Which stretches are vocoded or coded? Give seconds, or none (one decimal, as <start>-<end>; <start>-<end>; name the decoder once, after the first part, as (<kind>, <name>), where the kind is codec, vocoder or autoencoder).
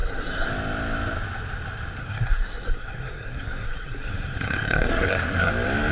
0.0-0.5 (codec, SNAC); 2.0-5.5